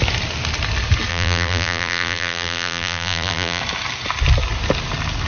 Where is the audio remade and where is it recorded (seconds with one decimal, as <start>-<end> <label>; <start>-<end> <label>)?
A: 0.0-1.1 recorded; 1.1-3.6 remade; 3.6-5.3 recorded